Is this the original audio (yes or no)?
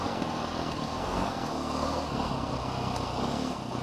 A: no